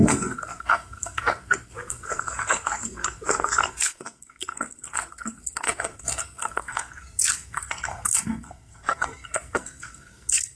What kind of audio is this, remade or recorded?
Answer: remade